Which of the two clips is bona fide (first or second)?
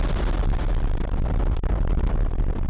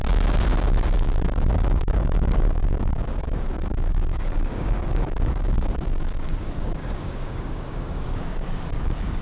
first